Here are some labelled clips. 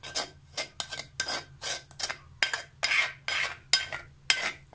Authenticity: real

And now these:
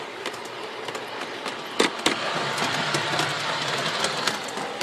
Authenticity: real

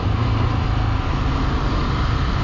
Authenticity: real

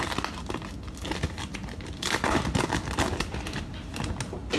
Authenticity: real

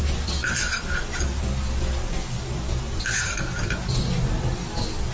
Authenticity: real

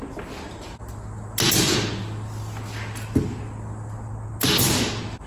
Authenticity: real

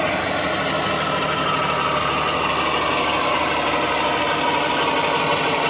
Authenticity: real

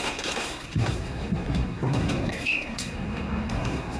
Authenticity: fake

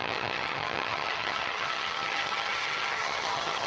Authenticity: fake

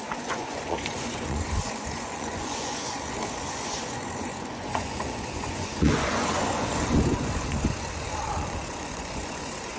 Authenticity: fake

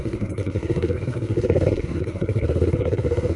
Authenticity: fake